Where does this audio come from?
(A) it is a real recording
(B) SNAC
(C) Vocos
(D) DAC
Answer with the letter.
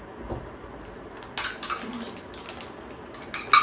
A